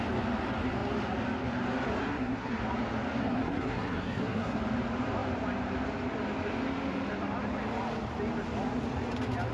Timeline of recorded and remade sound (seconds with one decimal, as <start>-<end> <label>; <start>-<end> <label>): 0.0-2.0 recorded; 2.0-2.6 remade; 2.6-3.2 recorded; 3.2-4.6 remade; 4.6-9.5 recorded